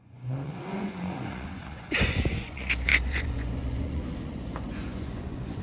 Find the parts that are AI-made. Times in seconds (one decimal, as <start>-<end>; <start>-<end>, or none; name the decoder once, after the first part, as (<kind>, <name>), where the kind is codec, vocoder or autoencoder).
0.0-5.6 (vocoder, Vocos)

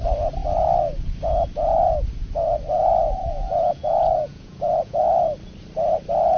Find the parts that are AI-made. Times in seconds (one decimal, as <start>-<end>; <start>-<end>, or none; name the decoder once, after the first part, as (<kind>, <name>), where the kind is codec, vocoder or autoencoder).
2.9-5.0 (vocoder, Vocos)

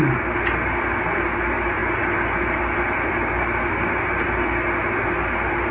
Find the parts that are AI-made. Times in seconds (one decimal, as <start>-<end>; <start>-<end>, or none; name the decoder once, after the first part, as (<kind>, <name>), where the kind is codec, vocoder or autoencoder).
none

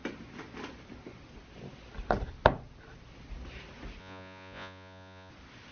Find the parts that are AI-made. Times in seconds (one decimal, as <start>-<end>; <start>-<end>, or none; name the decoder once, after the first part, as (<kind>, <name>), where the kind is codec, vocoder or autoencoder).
4.0-5.3 (vocoder, Vocos)

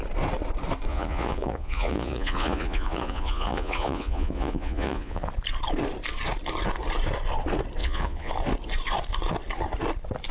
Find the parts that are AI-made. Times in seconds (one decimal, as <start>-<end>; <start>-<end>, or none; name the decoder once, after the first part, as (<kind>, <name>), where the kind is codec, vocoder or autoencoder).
0.9-5.3 (vocoder, Vocos); 7.8-8.3

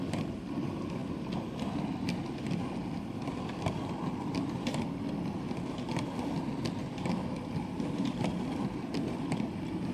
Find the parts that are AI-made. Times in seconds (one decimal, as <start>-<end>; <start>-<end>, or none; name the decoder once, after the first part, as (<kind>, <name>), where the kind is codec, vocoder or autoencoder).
none

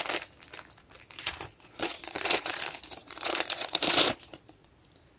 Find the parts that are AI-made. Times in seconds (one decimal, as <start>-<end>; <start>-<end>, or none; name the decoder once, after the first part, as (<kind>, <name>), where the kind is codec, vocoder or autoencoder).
1.2-2.6 (vocoder, Vocos); 3.0-4.7